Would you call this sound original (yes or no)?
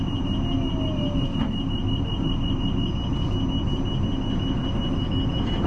yes